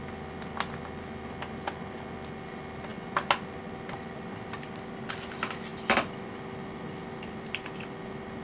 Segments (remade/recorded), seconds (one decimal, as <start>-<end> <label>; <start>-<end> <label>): 0.0-8.4 recorded